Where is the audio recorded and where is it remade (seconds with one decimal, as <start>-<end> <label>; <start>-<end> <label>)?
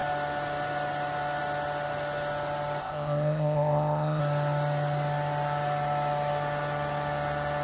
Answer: 0.0-2.8 recorded; 2.8-4.2 remade; 4.2-7.6 recorded